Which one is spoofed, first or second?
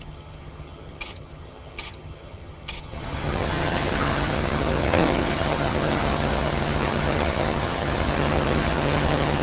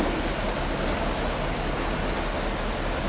first